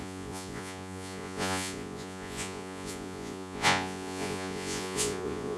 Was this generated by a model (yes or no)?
yes